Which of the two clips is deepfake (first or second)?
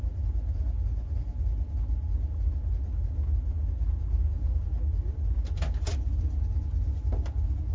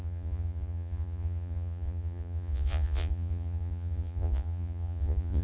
second